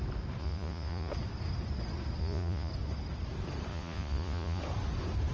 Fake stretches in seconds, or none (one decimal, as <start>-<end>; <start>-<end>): 0.4-1.1; 2.2-2.7; 3.7-4.6